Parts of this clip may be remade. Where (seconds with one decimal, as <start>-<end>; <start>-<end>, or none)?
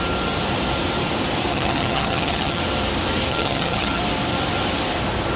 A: 1.5-2.6; 3.3-4.0